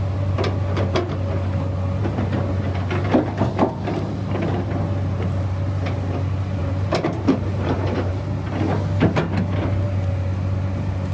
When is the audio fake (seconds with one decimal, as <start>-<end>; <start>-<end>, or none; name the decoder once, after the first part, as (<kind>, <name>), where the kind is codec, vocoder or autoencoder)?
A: 6.6-8.1 (vocoder, BigVGAN v2)